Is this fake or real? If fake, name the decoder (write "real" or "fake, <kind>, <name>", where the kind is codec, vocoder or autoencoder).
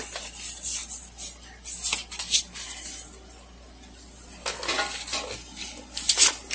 real